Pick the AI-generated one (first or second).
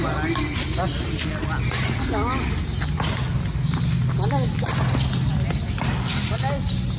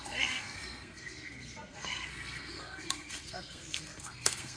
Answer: second